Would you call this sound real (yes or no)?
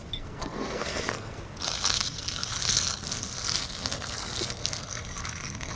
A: no